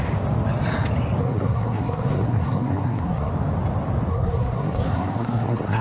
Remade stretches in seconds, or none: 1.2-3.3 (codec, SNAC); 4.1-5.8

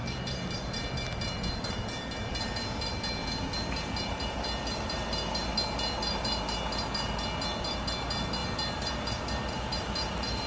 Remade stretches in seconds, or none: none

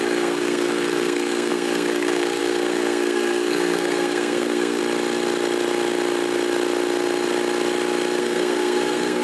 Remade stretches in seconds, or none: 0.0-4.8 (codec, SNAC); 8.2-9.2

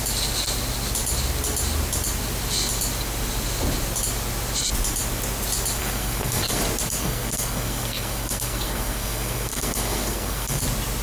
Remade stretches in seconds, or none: 5.8-6.6 (codec, SNAC); 7.0-10.6